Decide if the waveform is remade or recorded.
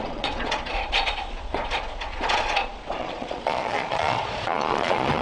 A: remade